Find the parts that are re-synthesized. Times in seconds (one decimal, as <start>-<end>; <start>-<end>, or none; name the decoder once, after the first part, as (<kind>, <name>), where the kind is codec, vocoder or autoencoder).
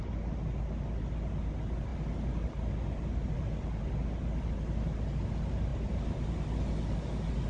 none